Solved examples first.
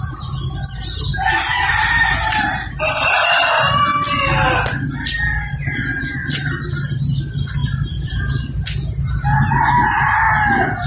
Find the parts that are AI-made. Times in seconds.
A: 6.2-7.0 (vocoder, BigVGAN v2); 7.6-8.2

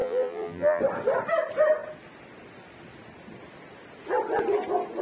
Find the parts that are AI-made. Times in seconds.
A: 0.0-0.8 (vocoder, BigVGAN v2)

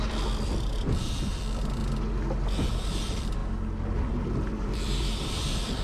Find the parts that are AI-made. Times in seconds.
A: 0.0-1.8 (vocoder, BigVGAN v2); 2.8-3.4; 4.1-5.8

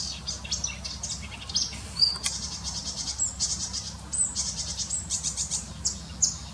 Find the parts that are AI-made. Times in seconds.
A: 2.8-5.7 (vocoder, BigVGAN v2)